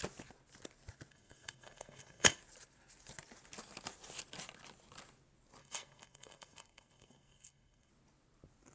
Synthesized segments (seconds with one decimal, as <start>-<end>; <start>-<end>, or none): 1.1-2.4; 5.6-7.9